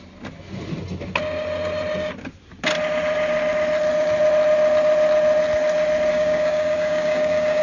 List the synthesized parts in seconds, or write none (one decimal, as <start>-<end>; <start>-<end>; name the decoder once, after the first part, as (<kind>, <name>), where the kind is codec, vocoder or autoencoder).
6.1-7.6 (codec, DAC)